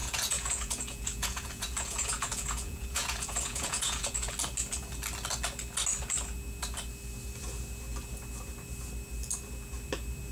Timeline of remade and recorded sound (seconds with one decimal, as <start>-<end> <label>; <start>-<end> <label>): 0.0-4.3 remade; 4.3-10.3 recorded

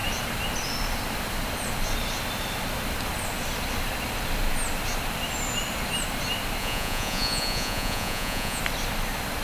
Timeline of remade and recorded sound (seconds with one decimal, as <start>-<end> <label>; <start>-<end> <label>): 0.0-6.6 recorded; 6.6-8.6 remade; 8.6-9.4 recorded

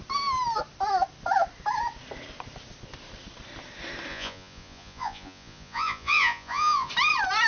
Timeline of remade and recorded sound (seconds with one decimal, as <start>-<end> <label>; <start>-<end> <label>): 0.0-4.1 recorded; 4.1-6.9 remade; 6.9-7.5 recorded